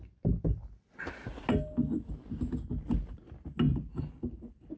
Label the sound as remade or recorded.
recorded